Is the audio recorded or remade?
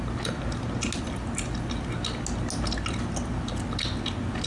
recorded